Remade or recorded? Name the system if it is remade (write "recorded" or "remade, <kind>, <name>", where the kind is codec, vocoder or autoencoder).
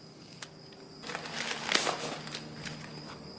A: recorded